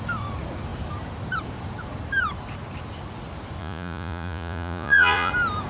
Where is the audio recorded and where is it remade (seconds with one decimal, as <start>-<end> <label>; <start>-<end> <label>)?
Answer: 0.0-3.6 recorded; 3.6-5.3 remade; 5.3-5.7 recorded